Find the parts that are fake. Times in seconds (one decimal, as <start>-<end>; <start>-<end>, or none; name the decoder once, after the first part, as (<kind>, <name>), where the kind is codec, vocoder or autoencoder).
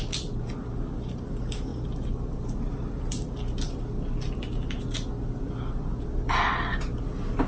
1.7-2.9 (vocoder, BigVGAN v2)